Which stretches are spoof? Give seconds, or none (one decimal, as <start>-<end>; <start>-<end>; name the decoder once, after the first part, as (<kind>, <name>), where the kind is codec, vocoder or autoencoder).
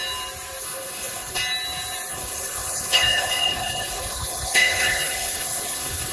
0.6-1.4 (codec, HILCodec); 2.1-6.1